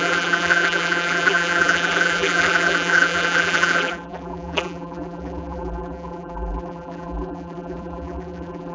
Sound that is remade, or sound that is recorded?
remade